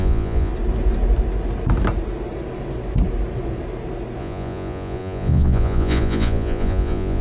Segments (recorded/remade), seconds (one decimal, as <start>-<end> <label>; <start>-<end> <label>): 0.0-0.5 remade; 0.5-4.2 recorded; 4.2-7.2 remade